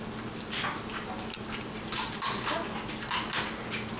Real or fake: real